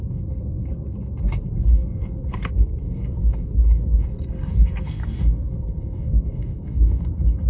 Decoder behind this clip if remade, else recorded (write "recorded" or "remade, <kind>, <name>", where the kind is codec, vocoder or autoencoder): remade, codec, SNAC